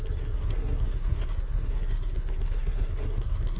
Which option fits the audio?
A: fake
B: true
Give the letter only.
A